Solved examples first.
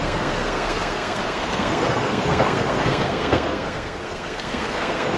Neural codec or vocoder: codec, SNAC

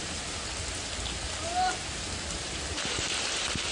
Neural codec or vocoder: none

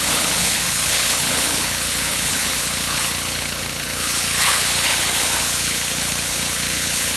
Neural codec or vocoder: codec, HILCodec